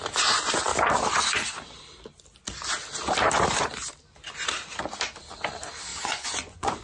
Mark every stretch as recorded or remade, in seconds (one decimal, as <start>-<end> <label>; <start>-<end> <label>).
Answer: 0.0-5.9 recorded; 5.9-6.8 remade